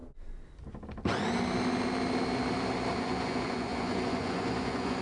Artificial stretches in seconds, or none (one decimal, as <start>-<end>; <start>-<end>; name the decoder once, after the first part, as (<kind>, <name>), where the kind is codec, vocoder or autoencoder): 3.0-5.0 (vocoder, Vocos)

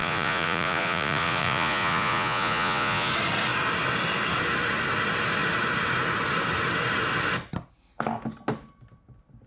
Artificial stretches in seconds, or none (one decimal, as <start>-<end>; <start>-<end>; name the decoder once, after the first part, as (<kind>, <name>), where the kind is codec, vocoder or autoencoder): 0.0-3.1 (vocoder, Vocos)

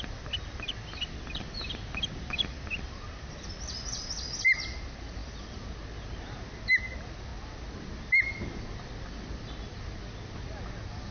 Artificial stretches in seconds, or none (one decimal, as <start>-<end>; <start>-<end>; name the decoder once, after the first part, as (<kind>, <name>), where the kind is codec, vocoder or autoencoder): none

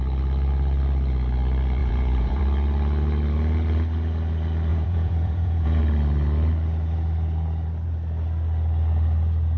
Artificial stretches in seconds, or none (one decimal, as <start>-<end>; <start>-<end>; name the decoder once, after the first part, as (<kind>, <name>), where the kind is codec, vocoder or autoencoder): 1.8-2.4 (vocoder, Vocos); 4.7-5.8

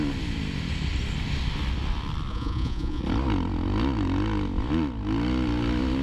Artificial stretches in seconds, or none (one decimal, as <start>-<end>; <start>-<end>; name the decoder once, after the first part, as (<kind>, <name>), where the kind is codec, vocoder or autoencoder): 2.3-3.0 (vocoder, Vocos)

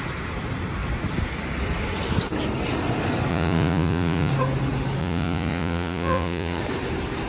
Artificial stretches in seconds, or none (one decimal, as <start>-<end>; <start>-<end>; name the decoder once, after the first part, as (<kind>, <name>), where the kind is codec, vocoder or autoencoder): 3.3-4.3 (vocoder, Vocos); 5.0-6.6